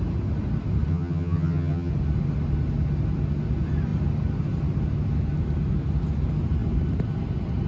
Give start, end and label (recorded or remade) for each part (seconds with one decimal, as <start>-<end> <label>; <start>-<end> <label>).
0.0-0.9 recorded; 0.9-1.9 remade; 1.9-7.7 recorded